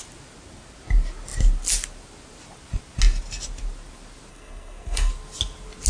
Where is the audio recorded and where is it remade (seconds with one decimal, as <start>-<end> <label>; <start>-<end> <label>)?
0.0-4.3 recorded; 4.3-5.1 remade; 5.1-5.9 recorded